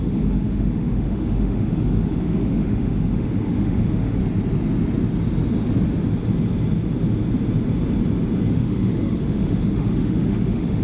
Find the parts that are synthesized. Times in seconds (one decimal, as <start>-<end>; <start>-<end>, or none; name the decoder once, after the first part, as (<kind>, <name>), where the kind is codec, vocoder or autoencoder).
0.0-4.2 (autoencoder, DAC-VAE); 8.5-10.8